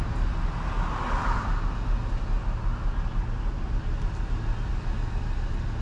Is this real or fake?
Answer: real